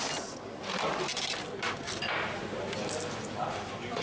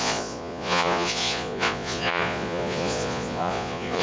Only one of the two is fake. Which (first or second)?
second